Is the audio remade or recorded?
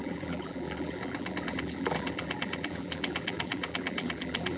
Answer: remade